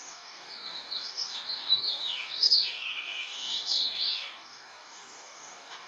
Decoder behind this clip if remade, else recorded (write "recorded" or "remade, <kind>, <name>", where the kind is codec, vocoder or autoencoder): remade, codec, DAC